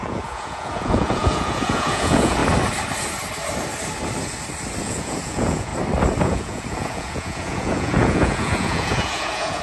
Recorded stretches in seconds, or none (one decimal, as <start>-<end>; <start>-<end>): 2.4-4.8; 5.7-6.2